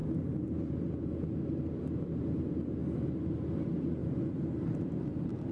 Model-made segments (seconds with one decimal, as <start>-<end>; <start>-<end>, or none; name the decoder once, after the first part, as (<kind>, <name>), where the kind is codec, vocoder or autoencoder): 0.0-1.1 (vocoder, BigVGAN v2); 4.0-5.5